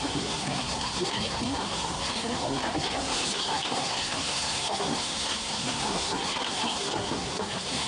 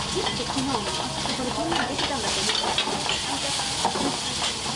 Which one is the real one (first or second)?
second